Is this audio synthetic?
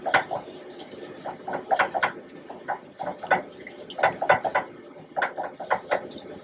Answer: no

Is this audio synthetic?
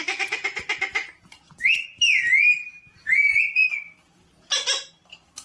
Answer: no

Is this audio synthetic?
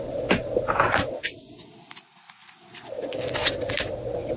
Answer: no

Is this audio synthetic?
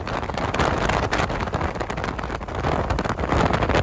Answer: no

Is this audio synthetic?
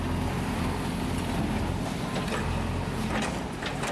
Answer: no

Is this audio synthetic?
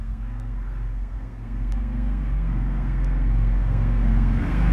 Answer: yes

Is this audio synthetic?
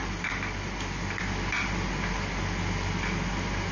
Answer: no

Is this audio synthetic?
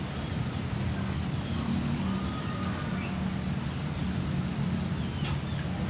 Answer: no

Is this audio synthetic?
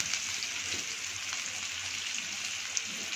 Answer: no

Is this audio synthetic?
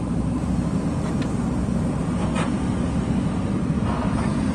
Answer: no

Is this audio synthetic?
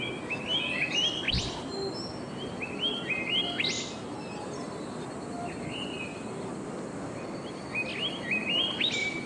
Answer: no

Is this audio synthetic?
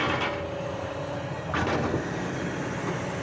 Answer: no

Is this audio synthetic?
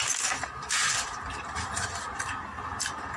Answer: no